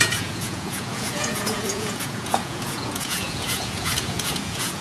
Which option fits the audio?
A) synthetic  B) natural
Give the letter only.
A